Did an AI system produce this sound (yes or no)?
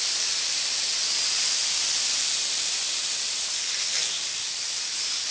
no